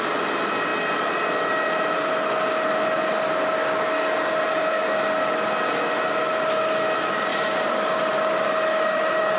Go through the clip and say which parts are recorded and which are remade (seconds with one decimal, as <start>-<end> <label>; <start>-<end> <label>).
0.0-3.6 recorded; 3.6-5.3 remade; 5.3-7.3 recorded; 7.3-9.4 remade